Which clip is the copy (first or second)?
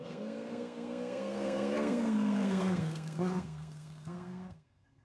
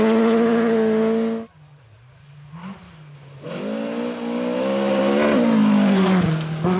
first